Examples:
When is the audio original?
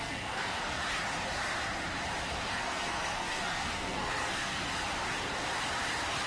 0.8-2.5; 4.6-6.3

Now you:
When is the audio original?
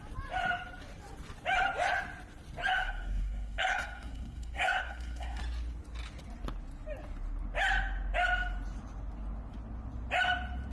0.0-2.7; 5.4-10.7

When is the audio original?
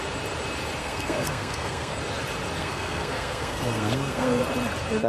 0.0-0.8; 2.0-2.6; 4.4-5.1